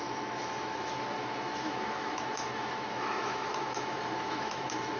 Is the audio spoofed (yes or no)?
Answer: yes